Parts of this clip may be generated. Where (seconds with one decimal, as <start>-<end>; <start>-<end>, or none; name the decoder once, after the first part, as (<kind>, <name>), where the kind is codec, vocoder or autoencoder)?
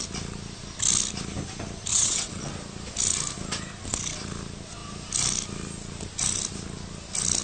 1.9-2.5 (vocoder, WaveNeXt)